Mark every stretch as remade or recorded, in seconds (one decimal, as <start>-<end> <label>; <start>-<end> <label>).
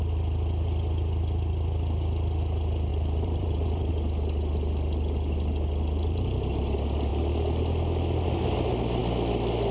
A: 0.0-2.9 recorded; 2.9-3.9 remade; 3.9-9.7 recorded